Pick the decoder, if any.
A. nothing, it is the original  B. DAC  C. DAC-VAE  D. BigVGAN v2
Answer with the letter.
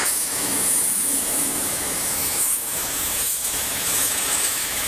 C